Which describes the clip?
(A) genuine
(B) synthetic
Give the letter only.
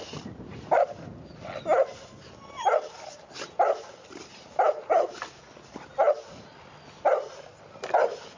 A